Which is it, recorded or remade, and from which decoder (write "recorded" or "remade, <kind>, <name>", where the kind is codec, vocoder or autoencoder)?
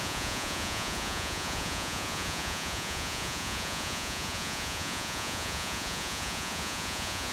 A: remade, vocoder, Vocos